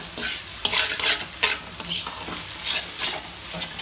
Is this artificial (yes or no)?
no